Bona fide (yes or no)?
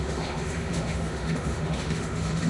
no